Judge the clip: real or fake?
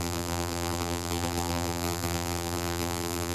fake